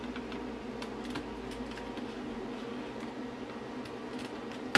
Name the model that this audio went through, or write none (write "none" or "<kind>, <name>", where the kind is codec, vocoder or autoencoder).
none